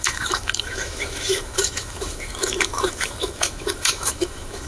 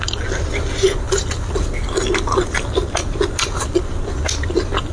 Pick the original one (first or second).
second